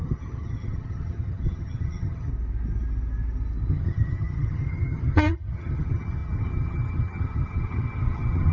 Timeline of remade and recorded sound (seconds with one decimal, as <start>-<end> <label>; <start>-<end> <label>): 0.0-2.3 remade; 2.3-3.7 recorded; 3.7-8.5 remade